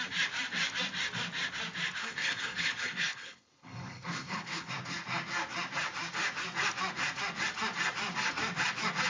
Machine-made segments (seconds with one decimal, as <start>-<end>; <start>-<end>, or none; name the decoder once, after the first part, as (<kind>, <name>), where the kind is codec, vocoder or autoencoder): 2.0-4.7 (codec, HILCodec)